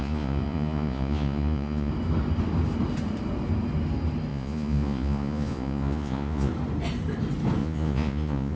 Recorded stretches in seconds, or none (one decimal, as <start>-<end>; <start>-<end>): 1.9-4.3; 6.5-7.6